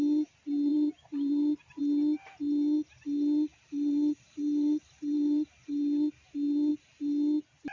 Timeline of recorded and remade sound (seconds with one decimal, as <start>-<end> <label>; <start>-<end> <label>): 0.0-0.7 recorded; 0.7-1.8 remade; 1.8-3.5 recorded; 3.5-5.5 remade; 5.5-7.7 recorded